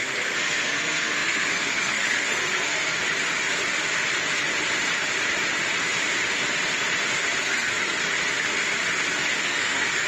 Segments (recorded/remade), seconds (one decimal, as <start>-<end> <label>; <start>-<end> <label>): 0.0-3.0 remade; 3.0-7.4 recorded; 7.4-8.0 remade; 8.0-9.4 recorded; 9.4-10.1 remade